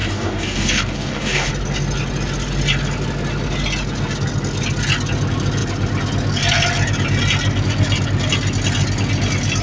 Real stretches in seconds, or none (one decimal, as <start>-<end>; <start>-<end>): 1.5-9.6